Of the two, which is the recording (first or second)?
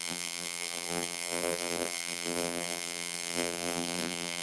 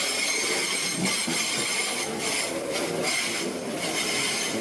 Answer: second